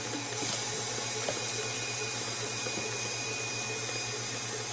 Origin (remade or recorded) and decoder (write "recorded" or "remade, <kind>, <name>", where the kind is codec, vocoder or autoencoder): recorded